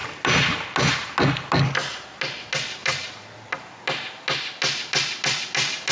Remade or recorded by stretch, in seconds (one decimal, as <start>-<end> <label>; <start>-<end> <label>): 0.0-5.9 recorded